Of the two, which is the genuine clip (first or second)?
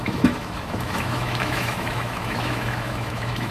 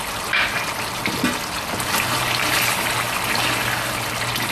second